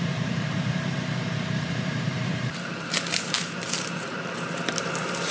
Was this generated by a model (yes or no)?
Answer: yes